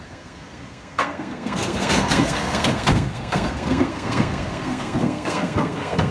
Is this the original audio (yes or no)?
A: no